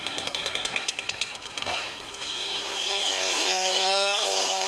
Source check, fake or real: fake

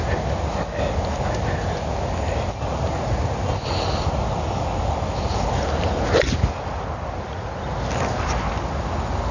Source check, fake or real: real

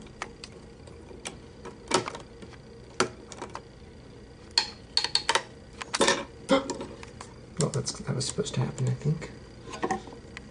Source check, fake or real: real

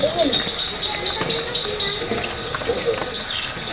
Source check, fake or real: real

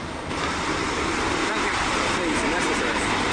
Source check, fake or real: real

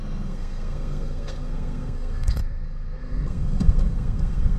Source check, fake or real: fake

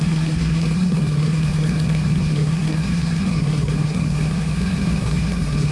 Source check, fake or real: fake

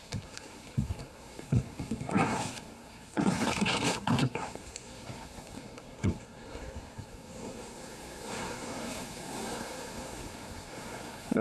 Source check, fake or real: fake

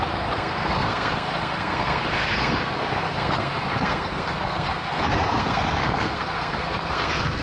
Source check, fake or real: fake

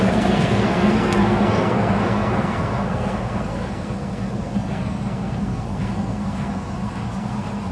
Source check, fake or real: fake